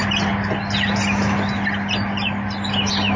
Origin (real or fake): real